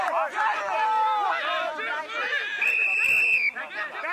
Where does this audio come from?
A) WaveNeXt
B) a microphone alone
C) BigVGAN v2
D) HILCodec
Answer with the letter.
B